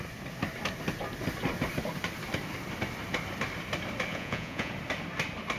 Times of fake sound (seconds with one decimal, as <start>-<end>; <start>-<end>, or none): 4.1-4.7